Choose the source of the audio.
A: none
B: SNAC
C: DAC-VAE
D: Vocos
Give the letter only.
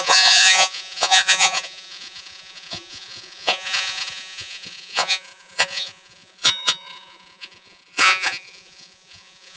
D